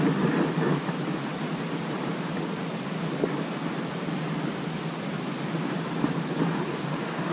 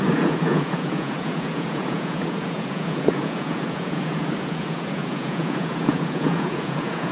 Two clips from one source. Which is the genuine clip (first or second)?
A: first